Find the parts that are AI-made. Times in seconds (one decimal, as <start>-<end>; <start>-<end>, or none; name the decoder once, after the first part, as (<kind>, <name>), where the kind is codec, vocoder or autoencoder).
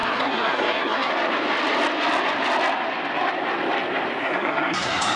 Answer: 0.0-1.1 (codec, SNAC); 4.2-5.2